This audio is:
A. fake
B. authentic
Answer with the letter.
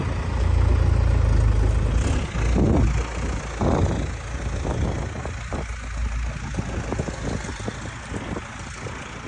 B